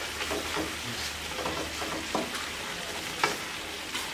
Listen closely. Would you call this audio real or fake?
real